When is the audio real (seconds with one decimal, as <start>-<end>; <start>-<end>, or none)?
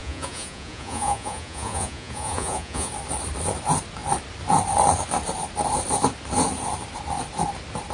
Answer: 2.9-7.9